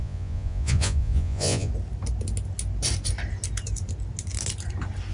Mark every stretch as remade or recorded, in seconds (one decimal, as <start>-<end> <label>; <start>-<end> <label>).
0.0-1.7 remade; 1.7-5.1 recorded